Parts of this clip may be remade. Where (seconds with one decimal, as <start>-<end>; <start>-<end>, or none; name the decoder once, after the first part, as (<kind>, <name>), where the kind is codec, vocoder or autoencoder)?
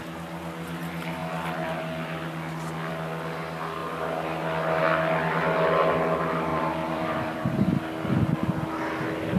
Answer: 6.5-7.8 (vocoder, BigVGAN v2)